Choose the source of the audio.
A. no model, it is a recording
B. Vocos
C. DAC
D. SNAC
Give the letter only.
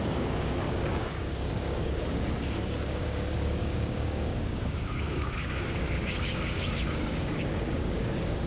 C